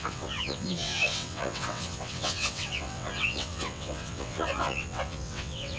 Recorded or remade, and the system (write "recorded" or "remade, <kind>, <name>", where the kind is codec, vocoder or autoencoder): remade, vocoder, WaveNeXt